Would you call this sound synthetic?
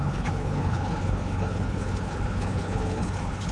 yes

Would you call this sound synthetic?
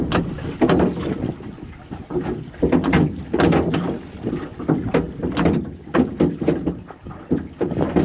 no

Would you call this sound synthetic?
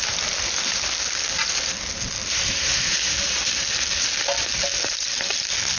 no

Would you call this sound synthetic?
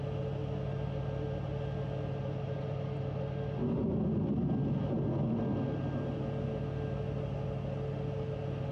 no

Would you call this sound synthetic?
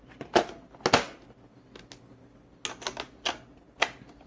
no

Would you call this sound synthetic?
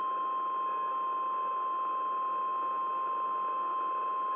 no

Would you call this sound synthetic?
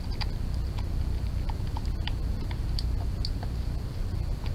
no